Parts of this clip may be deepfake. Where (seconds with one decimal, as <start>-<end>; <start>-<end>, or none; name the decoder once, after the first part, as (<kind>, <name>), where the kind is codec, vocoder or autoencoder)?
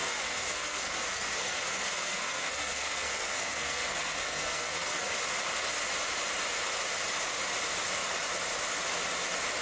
0.0-5.1 (codec, SNAC)